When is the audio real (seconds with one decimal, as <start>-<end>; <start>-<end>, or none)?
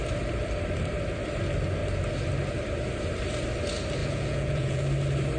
0.0-4.0; 4.8-5.4